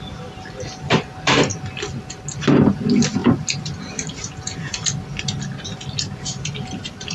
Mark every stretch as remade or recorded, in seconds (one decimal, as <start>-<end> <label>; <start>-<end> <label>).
0.0-7.1 recorded